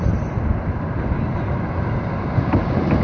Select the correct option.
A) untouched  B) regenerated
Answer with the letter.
A